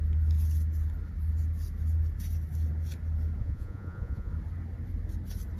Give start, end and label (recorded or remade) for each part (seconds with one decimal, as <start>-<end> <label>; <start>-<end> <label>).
0.0-3.4 recorded; 3.4-4.3 remade; 4.3-5.6 recorded

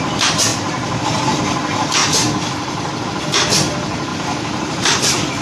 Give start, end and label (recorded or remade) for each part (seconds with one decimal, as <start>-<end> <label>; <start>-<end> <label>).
0.0-0.5 recorded; 0.5-1.0 remade; 1.0-4.1 recorded; 4.1-5.4 remade